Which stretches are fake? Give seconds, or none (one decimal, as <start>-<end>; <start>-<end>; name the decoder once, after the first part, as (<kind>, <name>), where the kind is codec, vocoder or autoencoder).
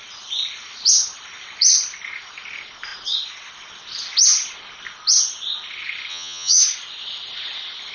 6.1-6.6 (vocoder, HiFi-GAN)